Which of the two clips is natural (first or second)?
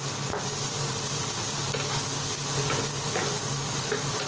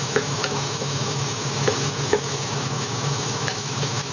first